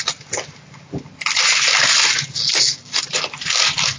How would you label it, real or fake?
real